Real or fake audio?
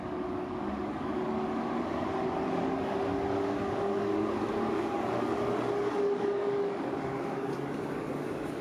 fake